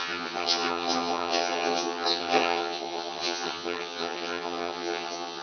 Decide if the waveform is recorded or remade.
remade